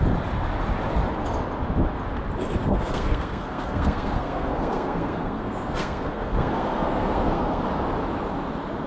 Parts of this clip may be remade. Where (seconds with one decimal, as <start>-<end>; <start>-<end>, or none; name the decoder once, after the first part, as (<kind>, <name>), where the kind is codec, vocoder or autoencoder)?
2.6-7.6 (codec, SNAC)